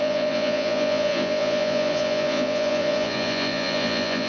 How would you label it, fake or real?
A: fake